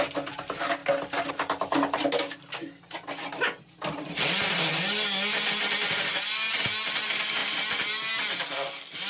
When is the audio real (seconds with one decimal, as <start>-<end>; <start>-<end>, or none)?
0.0-9.1